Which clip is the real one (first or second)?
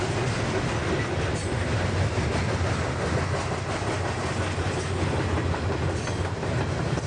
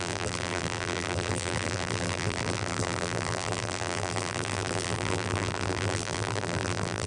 first